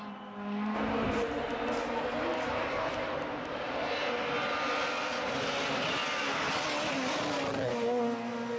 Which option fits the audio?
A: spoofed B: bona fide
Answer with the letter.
B